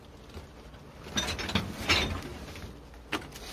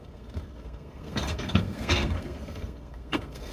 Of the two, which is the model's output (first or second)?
second